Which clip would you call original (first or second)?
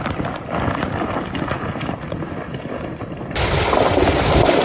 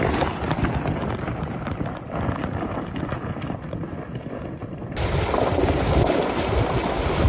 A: second